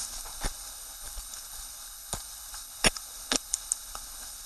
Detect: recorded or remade remade